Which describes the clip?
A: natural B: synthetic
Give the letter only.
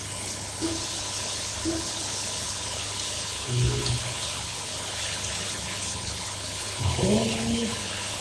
B